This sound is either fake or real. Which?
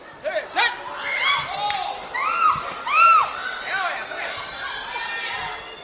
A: real